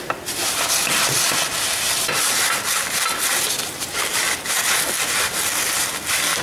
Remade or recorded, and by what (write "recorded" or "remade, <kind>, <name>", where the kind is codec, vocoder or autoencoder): recorded